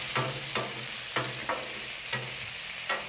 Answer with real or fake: real